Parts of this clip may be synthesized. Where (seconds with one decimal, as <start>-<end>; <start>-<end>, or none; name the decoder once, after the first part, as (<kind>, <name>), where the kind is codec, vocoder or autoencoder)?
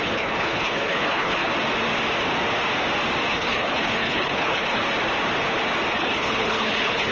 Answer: 0.0-1.5 (codec, HILCodec); 3.3-4.8; 5.9-7.1